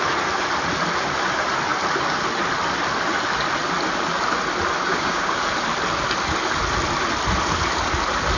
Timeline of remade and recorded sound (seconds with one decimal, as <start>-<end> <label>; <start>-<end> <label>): 0.0-4.9 recorded; 4.9-5.4 remade; 5.4-8.4 recorded